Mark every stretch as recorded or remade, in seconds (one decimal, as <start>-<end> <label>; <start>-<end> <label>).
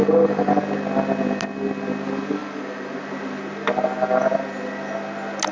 0.0-0.6 remade; 0.6-2.4 recorded; 2.4-3.0 remade; 3.0-5.5 recorded